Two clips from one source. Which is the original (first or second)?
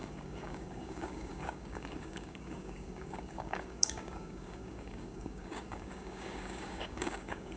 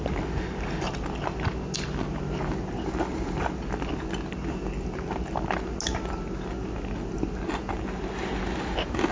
second